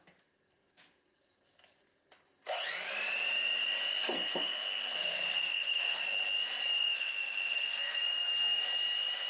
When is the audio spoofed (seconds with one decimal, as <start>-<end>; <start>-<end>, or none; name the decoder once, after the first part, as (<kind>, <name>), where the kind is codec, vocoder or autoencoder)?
4.0-6.0 (codec, SNAC); 6.8-8.6